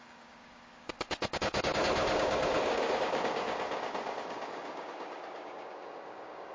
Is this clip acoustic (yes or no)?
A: no